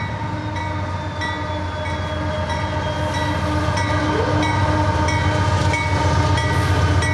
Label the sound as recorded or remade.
recorded